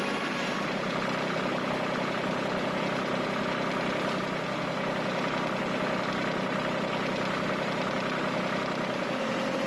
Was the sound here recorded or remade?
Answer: recorded